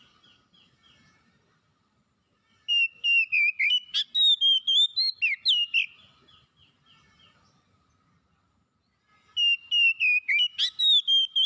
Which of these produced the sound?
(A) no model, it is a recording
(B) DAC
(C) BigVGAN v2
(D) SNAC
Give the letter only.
A